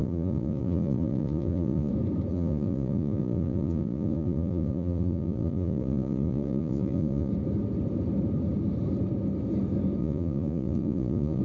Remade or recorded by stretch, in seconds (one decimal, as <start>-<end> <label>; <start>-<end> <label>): 0.0-1.9 remade; 1.9-2.3 recorded; 2.3-7.3 remade; 7.3-10.0 recorded; 10.0-11.4 remade